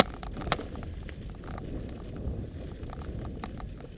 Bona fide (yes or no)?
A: yes